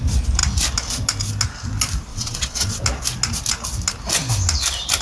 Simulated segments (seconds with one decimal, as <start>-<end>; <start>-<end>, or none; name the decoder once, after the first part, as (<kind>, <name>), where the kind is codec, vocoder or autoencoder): 2.1-2.8 (vocoder, WaveNeXt)